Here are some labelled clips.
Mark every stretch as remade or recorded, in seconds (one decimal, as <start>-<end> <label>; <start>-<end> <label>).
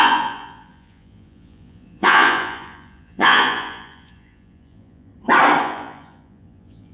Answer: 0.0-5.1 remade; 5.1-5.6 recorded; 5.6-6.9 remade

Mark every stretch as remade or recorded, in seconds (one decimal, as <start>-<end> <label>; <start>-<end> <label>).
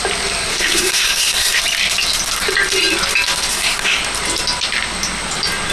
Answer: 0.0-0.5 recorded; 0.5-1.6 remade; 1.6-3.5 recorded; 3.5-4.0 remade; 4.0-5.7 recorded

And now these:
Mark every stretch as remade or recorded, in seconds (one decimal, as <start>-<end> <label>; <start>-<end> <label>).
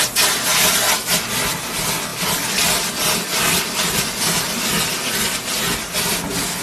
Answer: 0.0-6.6 recorded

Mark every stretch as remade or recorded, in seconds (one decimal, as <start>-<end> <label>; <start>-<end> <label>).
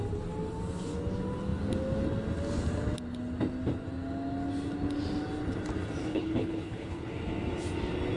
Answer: 0.0-6.1 recorded; 6.1-7.1 remade; 7.1-8.2 recorded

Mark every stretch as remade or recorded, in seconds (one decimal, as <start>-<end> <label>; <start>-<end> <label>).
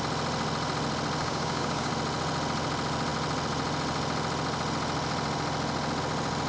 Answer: 0.0-1.2 recorded; 1.2-1.9 remade; 1.9-6.5 recorded